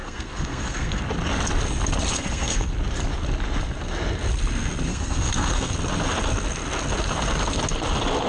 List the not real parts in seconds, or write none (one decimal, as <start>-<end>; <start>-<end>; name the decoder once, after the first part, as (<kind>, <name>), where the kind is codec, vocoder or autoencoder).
0.0-1.0 (codec, SNAC); 2.1-2.7; 4.9-5.7